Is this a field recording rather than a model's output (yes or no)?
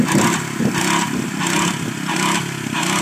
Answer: yes